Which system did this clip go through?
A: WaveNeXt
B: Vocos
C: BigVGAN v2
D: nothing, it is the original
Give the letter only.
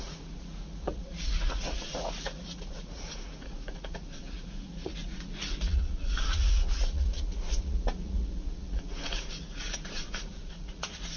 B